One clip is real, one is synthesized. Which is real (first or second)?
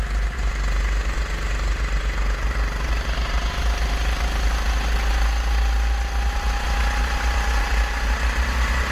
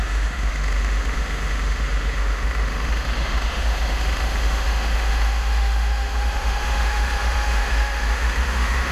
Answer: first